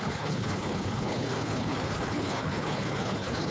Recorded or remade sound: remade